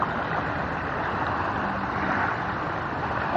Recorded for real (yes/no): no